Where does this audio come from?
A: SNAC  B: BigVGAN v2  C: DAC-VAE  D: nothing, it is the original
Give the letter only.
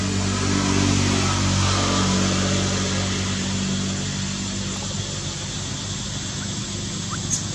D